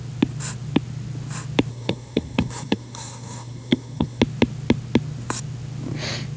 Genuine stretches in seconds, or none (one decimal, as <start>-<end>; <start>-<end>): 0.0-1.7; 4.2-6.4